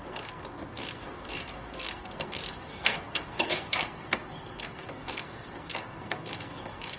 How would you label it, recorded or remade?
remade